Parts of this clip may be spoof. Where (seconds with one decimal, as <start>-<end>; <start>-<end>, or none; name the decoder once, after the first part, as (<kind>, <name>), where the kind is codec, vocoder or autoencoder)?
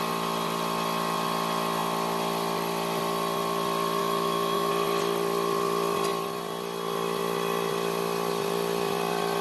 4.0-4.7 (autoencoder, DAC-VAE)